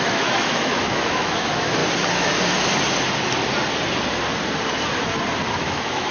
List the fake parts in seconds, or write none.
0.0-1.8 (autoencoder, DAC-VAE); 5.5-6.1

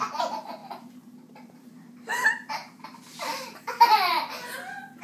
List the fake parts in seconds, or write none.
0.6-2.5 (vocoder, BigVGAN v2); 2.9-4.1

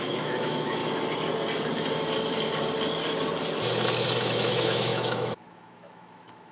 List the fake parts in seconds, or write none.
0.0-0.8 (autoencoder, DAC-VAE); 4.2-6.5